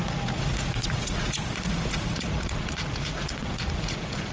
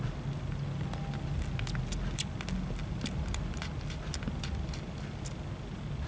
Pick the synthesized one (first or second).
first